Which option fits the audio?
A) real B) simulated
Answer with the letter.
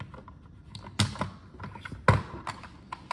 A